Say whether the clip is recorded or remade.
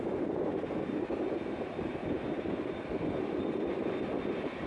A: recorded